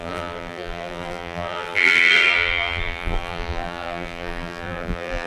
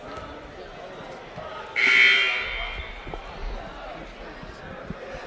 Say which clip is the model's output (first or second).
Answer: first